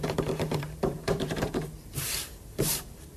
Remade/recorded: remade